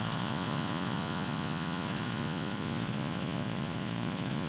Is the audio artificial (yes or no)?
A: yes